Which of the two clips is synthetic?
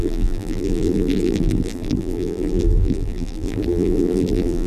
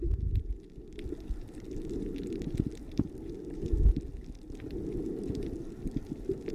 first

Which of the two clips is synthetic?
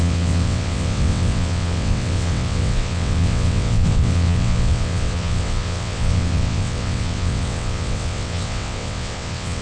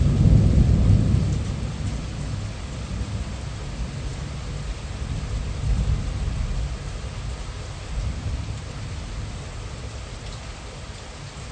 first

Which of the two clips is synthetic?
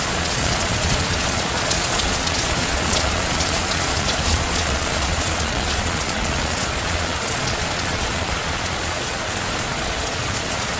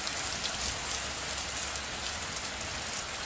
first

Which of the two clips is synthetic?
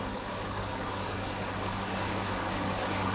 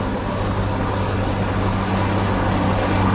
first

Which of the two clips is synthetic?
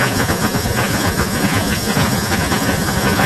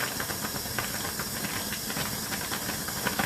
first